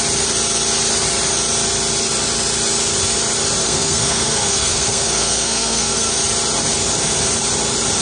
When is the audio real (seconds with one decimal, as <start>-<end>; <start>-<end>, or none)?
0.0-3.6; 6.1-8.0